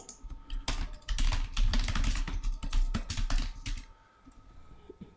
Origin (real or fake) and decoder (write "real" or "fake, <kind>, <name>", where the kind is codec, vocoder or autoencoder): real